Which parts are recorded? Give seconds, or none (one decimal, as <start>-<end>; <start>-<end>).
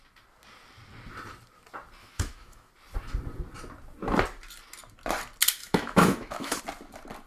0.0-2.0; 2.7-5.6; 6.6-7.3